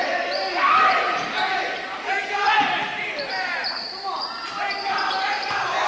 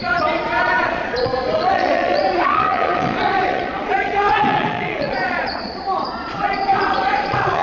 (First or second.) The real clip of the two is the first